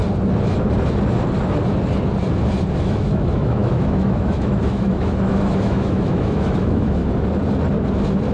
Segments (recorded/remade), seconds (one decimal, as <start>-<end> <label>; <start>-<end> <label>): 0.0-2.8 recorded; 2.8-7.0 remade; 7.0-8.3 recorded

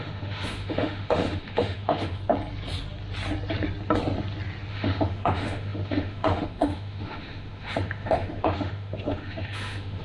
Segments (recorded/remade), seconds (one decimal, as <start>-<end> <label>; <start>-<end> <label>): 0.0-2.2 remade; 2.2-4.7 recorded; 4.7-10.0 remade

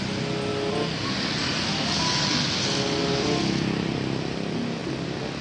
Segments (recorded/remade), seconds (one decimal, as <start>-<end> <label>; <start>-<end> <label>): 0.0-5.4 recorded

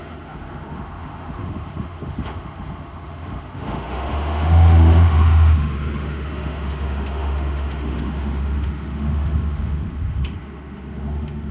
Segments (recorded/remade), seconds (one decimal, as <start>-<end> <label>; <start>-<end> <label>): 0.0-11.5 remade

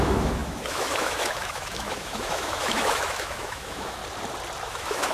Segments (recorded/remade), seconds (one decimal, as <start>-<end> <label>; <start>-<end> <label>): 0.0-4.0 remade; 4.0-4.6 recorded; 4.6-5.1 remade

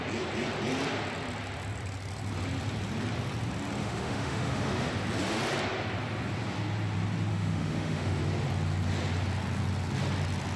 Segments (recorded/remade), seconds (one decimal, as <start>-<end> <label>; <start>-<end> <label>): 0.0-3.8 recorded; 3.8-4.9 remade; 4.9-7.3 recorded; 7.3-8.2 remade; 8.2-10.6 recorded

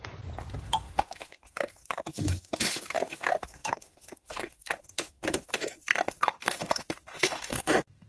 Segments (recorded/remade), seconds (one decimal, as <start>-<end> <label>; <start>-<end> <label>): 0.0-0.6 recorded; 0.6-8.1 remade

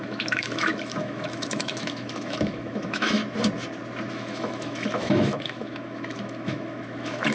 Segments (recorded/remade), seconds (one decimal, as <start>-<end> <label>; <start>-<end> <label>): 0.0-3.2 remade; 3.2-4.1 recorded; 4.1-7.3 remade